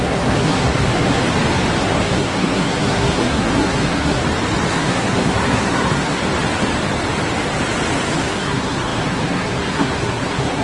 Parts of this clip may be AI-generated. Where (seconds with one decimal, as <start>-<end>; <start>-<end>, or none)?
0.0-1.2; 1.8-4.2; 4.7-6.2; 8.2-10.6